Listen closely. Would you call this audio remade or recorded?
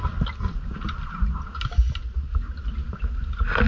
recorded